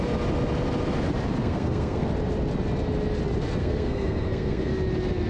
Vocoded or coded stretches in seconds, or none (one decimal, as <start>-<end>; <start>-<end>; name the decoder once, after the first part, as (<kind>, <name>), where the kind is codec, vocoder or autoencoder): 1.4-2.1 (codec, SNAC); 3.6-4.7